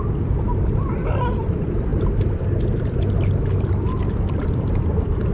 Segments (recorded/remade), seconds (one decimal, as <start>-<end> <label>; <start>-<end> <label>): 0.0-5.3 recorded